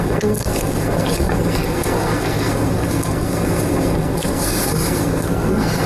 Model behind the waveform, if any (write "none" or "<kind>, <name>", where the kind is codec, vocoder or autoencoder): codec, SNAC